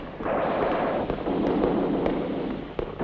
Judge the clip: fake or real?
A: real